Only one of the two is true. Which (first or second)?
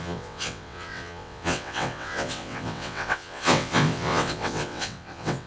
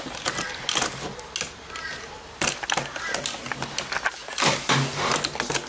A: second